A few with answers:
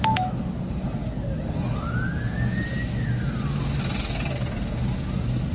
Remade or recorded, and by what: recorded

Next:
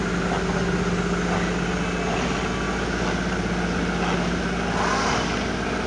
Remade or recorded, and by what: recorded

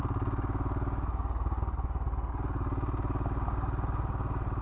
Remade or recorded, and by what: recorded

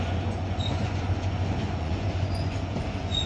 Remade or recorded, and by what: remade, vocoder, Vocos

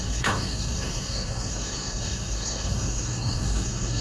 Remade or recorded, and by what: remade, codec, SNAC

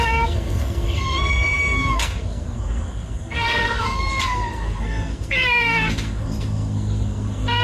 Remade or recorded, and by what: remade, codec, SNAC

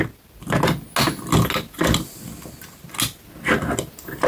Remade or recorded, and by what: recorded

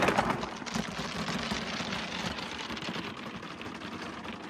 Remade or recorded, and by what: recorded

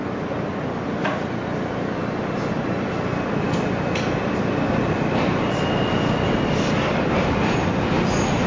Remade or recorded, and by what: recorded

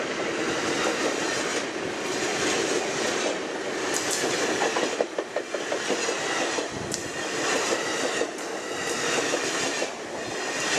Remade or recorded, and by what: recorded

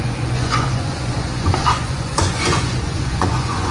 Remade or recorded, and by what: remade, vocoder, Vocos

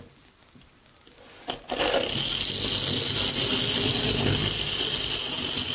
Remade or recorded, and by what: recorded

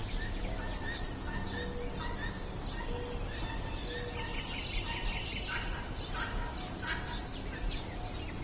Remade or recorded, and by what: recorded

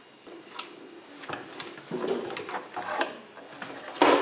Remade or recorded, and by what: recorded